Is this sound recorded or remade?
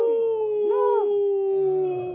recorded